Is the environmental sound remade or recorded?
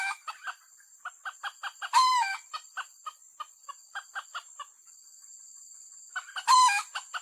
recorded